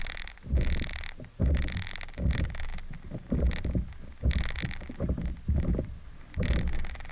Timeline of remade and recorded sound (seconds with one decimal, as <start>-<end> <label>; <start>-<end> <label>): 0.0-7.1 recorded

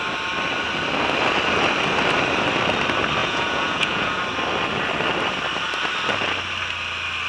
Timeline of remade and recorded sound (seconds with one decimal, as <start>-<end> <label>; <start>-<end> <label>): 0.0-3.2 recorded; 3.2-4.2 remade; 4.2-7.3 recorded

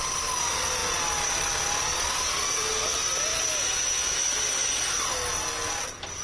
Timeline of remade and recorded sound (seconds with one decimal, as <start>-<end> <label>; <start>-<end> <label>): 0.0-6.2 recorded

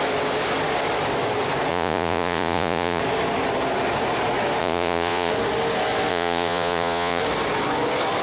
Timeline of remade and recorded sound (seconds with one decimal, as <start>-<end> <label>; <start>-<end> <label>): 0.0-1.7 recorded; 1.7-3.0 remade; 3.0-4.6 recorded; 4.6-5.3 remade; 5.3-6.1 recorded; 6.1-7.2 remade; 7.2-8.2 recorded

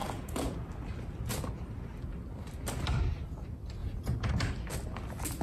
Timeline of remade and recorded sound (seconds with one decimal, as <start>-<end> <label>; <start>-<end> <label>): 0.0-0.6 remade; 0.6-3.8 recorded; 3.8-4.3 remade; 4.3-5.4 recorded

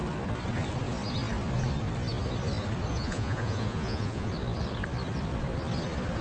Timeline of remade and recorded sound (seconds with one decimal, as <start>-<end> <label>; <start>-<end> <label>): 0.0-2.9 recorded; 2.9-4.3 remade; 4.3-6.2 recorded

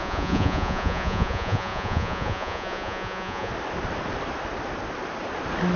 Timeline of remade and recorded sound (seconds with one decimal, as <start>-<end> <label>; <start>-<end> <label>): 0.0-3.5 remade; 3.5-5.8 recorded

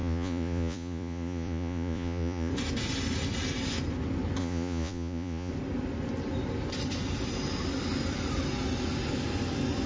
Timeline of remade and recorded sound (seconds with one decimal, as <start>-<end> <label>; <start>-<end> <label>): 0.0-2.5 remade; 2.5-4.4 recorded; 4.4-5.5 remade; 5.5-9.9 recorded